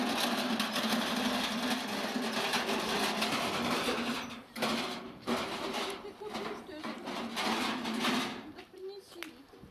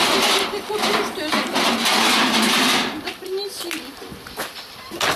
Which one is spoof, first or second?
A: second